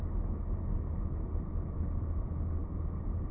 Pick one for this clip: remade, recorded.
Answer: recorded